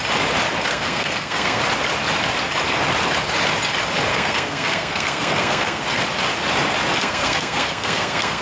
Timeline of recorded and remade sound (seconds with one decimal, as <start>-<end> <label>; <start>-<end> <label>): 0.0-0.7 recorded; 0.7-1.6 remade; 1.6-4.1 recorded; 4.1-6.0 remade; 6.0-7.0 recorded; 7.0-8.4 remade